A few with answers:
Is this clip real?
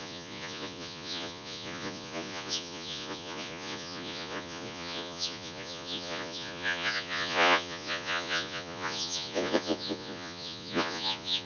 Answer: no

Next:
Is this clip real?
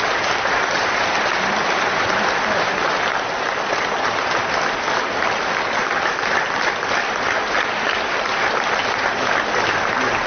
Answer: yes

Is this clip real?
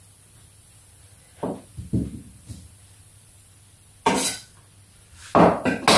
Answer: yes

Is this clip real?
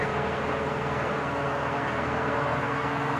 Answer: no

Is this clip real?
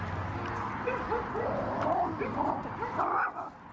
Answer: yes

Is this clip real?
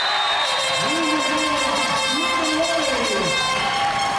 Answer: no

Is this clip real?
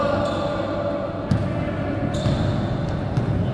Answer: yes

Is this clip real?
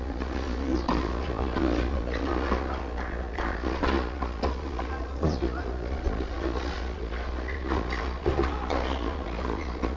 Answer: no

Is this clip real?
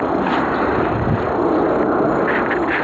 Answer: yes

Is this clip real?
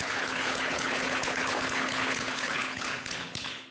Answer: no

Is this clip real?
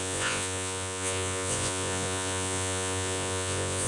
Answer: no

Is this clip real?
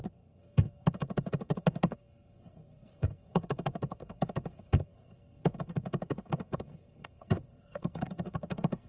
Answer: no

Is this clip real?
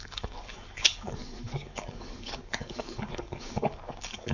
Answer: no